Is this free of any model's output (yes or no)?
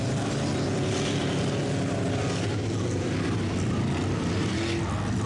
yes